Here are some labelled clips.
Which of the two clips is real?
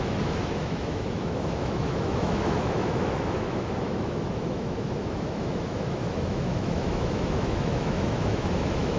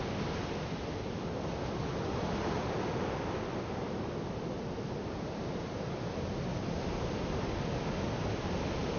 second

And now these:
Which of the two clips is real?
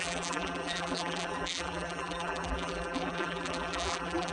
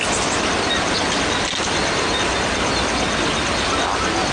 second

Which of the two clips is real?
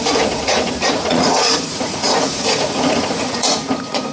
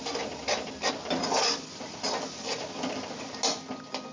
second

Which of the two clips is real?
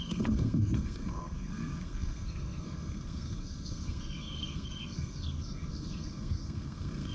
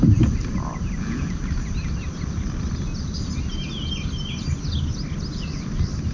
second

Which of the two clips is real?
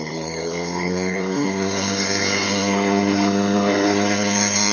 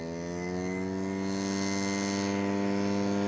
second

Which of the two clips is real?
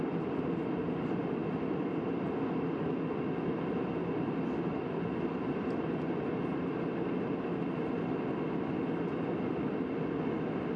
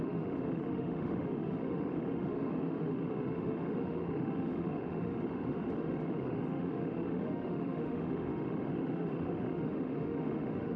first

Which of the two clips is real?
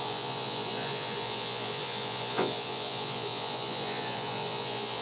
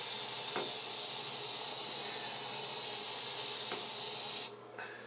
second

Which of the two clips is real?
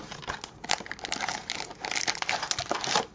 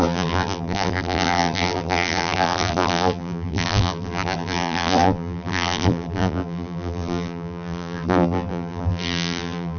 first